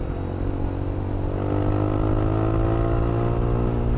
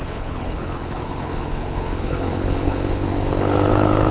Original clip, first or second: first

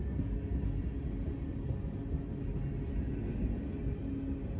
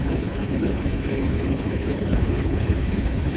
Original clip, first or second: first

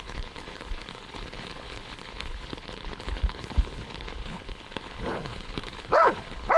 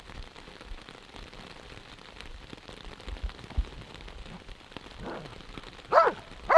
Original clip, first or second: second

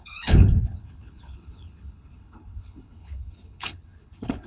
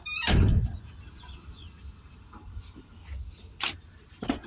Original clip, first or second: second